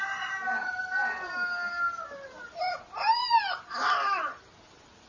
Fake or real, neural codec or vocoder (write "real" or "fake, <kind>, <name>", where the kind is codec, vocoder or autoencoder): real